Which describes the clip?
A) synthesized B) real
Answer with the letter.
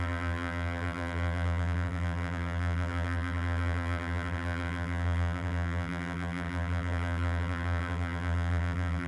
A